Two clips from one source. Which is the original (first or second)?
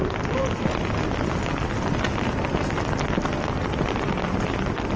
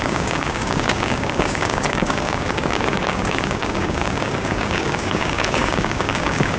first